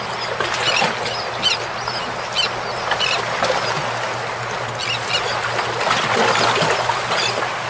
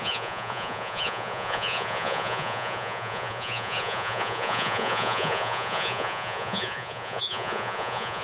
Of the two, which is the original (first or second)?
first